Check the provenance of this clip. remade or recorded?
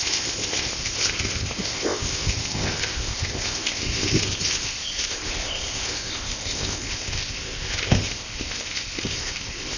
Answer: remade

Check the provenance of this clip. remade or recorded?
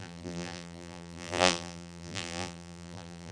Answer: remade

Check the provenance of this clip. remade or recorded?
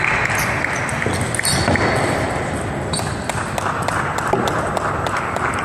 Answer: recorded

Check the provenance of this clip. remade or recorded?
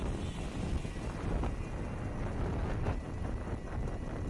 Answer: recorded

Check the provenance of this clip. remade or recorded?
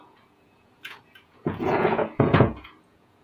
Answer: remade